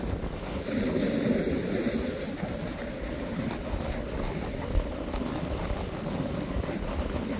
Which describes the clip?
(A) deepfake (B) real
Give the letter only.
B